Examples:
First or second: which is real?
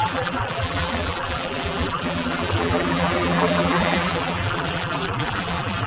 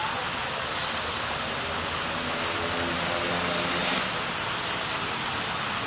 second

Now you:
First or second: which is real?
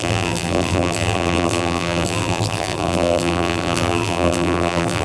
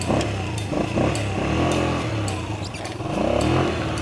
second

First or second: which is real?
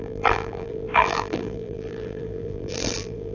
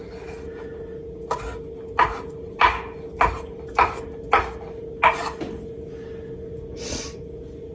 second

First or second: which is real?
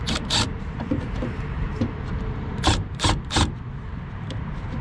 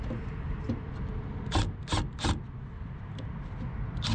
second